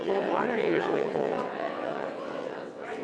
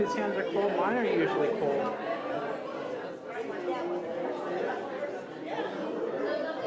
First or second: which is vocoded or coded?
first